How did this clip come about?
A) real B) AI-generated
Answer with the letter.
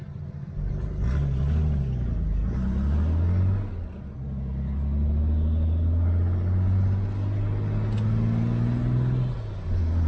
A